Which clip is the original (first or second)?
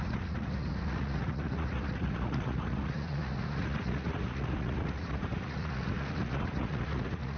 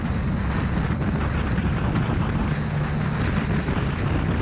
second